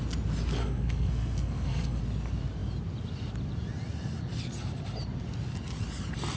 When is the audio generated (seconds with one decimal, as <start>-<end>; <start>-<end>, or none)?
0.6-2.0